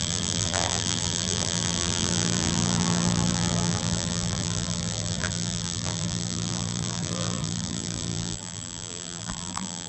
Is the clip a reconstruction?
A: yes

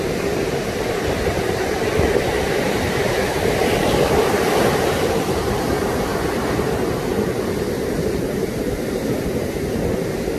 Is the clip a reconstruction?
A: yes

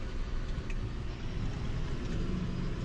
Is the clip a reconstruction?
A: no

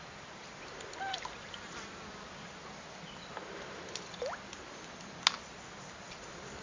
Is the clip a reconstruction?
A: no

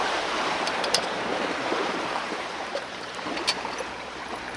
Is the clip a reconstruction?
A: yes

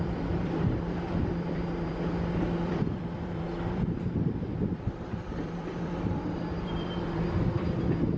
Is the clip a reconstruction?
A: yes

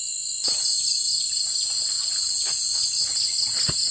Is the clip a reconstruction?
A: no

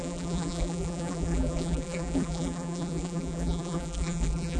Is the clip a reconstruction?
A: yes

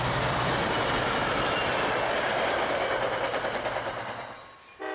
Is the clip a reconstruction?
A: no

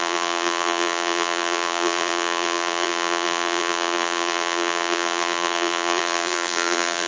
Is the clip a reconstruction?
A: yes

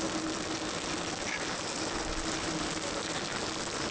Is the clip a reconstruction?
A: no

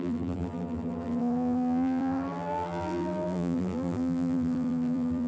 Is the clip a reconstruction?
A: yes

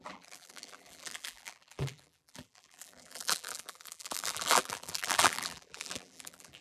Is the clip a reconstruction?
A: yes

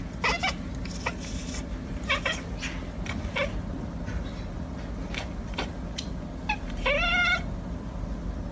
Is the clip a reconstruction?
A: no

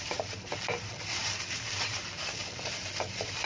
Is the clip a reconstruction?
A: yes